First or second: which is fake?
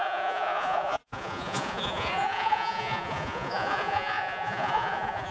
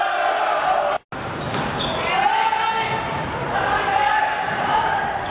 first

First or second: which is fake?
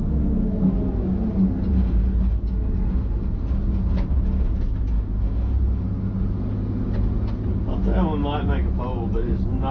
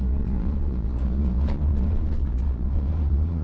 second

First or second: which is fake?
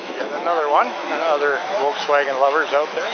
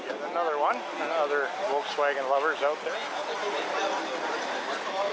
first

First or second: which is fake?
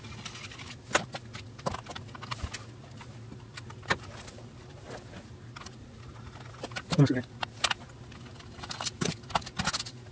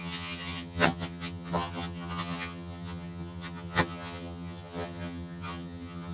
second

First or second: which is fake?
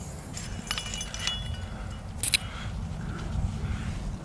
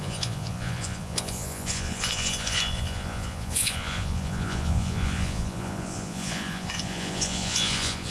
second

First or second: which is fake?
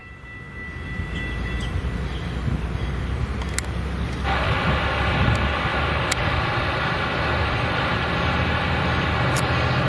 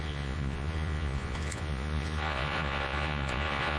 second